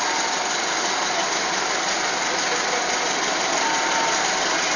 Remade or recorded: recorded